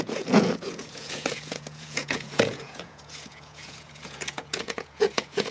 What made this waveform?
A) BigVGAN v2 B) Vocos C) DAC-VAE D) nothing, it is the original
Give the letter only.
B